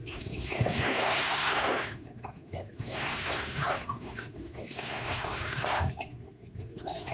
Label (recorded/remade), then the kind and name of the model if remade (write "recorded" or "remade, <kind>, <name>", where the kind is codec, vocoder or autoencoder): remade, codec, SNAC